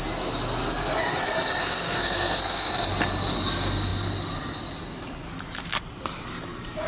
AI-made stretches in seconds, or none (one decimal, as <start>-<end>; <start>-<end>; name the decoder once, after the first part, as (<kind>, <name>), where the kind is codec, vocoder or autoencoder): 1.6-2.7 (codec, SNAC)